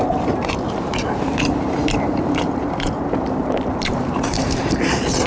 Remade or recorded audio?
remade